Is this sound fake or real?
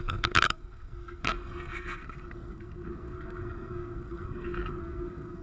fake